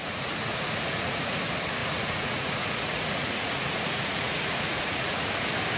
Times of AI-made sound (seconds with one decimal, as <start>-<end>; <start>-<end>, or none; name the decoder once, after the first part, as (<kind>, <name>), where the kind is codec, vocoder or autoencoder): 0.0-1.4 (vocoder, Vocos); 1.8-5.3